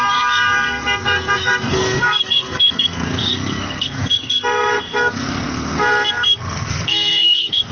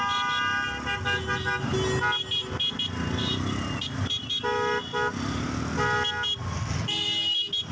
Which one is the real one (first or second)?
second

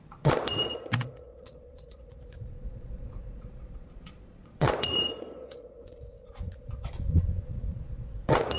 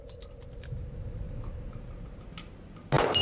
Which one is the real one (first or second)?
second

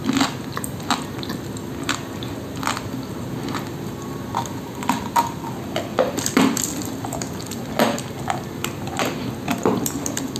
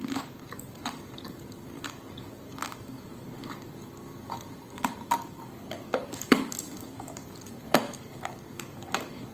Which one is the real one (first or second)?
first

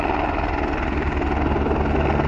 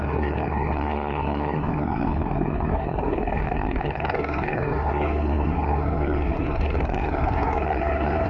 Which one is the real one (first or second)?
first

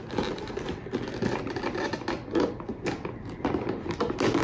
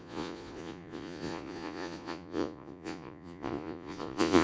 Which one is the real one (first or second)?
first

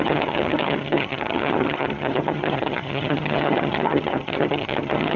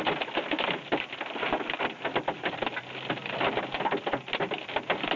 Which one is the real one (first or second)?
second